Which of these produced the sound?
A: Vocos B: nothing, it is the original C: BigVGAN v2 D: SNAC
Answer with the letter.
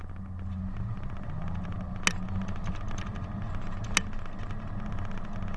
B